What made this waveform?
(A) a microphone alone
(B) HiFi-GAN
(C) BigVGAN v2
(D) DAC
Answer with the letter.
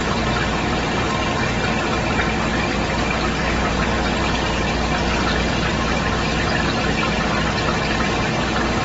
A